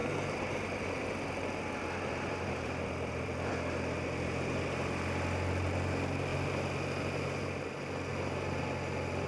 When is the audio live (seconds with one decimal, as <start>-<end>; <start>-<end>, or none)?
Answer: 3.5-9.3